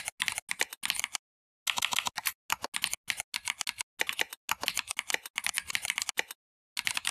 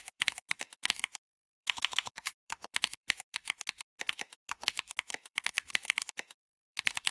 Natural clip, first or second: first